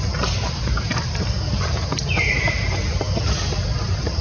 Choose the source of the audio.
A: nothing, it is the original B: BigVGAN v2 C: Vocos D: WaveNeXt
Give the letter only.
A